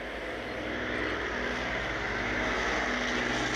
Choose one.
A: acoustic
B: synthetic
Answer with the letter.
A